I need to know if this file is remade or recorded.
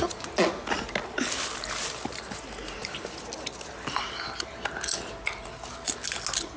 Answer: recorded